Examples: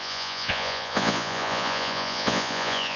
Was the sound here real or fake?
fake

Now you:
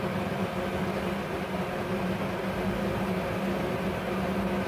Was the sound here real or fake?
real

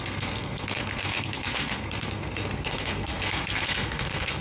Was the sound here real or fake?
fake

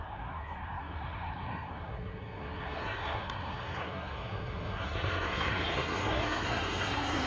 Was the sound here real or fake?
fake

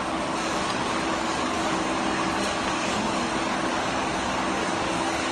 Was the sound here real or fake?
fake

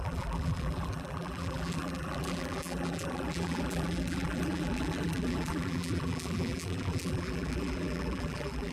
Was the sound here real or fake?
fake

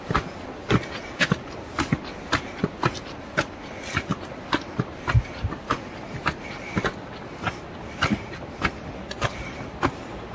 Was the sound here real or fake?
real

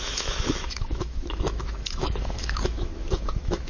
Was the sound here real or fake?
fake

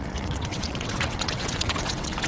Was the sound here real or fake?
fake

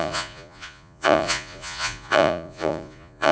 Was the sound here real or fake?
fake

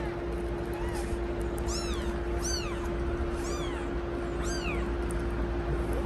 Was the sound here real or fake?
real